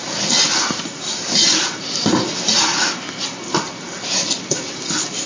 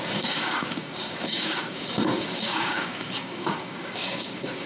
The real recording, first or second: first